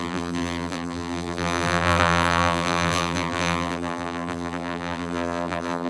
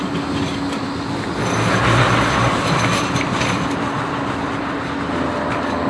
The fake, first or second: first